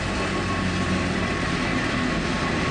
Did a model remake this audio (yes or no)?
no